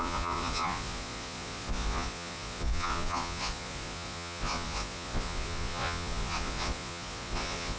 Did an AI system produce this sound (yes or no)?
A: yes